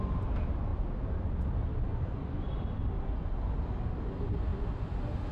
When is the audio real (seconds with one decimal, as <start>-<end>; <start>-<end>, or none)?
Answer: 0.0-5.3

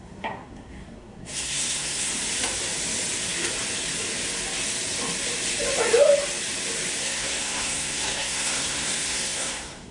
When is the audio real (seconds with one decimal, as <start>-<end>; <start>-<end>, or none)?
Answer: 2.1-7.0

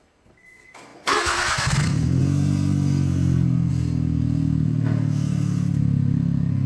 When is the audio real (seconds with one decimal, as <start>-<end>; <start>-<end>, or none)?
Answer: none

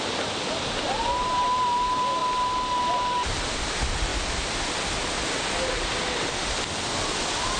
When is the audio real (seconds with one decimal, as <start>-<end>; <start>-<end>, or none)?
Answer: 0.0-7.6

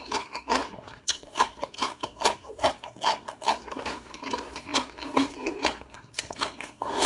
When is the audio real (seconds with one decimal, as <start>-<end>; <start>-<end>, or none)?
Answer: none

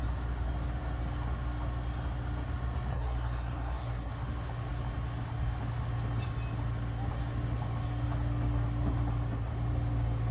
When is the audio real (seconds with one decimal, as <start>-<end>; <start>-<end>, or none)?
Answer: 0.0-2.9; 4.1-10.3

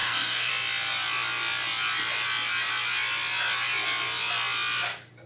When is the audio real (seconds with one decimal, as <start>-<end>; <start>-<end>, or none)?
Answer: 0.5-5.3

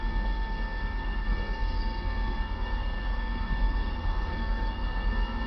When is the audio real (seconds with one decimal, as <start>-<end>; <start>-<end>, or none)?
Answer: none